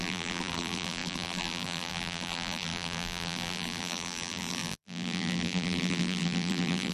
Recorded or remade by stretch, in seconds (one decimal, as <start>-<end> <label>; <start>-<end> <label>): 0.0-6.9 remade